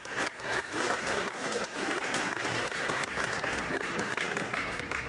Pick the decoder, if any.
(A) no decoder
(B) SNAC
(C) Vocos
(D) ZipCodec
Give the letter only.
B